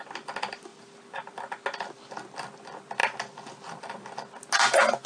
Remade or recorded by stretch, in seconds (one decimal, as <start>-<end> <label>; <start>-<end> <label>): 0.0-5.1 recorded